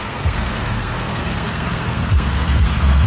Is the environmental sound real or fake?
fake